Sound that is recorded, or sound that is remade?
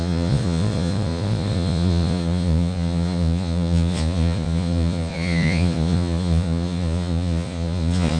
remade